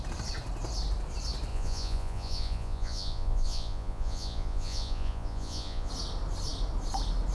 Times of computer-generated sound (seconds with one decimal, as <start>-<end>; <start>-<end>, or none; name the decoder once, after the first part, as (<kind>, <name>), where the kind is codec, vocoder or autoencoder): 1.5-5.9 (vocoder, Vocos)